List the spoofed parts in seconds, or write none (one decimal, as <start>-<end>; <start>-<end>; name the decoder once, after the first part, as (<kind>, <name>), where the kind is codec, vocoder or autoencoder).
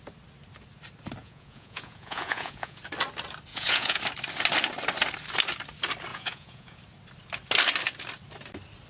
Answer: 1.2-2.8 (vocoder, Vocos); 3.5-4.0; 6.1-6.8